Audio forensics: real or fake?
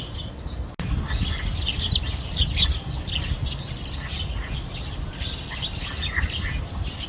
real